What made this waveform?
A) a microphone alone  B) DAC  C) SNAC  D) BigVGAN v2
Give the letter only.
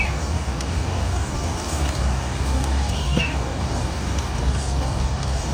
B